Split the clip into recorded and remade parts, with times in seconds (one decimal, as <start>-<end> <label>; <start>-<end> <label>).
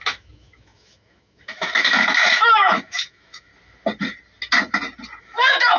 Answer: 0.0-3.5 remade; 3.5-5.2 recorded; 5.2-5.8 remade